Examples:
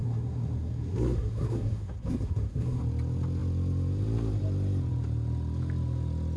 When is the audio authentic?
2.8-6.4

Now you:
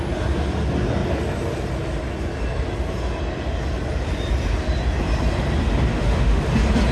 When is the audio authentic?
0.0-5.9; 6.4-6.9

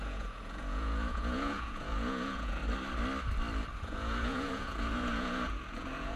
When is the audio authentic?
2.6-3.8

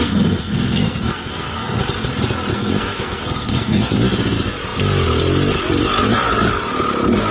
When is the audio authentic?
1.8-2.5; 3.9-7.3

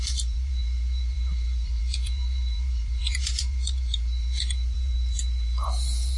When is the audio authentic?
none

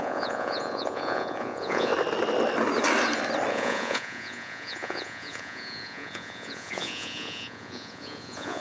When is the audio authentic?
1.9-3.5

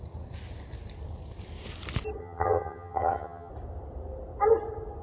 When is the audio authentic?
0.0-2.2; 3.5-5.0

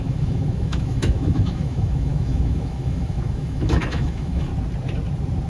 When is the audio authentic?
4.5-5.5